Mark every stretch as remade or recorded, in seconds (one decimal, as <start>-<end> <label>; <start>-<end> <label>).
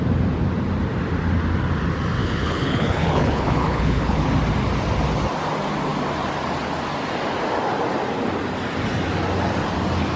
0.0-2.2 recorded; 2.2-4.3 remade; 4.3-10.2 recorded